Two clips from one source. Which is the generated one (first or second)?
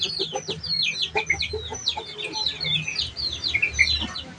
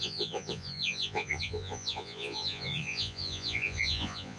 second